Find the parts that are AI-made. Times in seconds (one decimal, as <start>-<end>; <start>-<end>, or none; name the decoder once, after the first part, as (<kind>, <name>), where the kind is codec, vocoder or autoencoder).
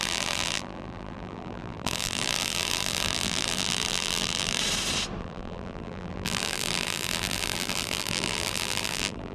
0.0-4.6 (vocoder, BigVGAN v2); 5.2-9.3